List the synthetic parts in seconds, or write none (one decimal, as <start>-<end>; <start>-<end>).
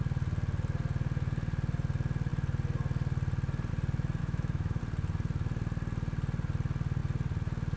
4.2-4.8